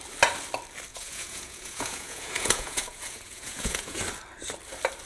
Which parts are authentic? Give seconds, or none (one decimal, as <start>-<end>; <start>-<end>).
0.0-0.9; 4.0-5.1